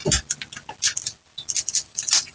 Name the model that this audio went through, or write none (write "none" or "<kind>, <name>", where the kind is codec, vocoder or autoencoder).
none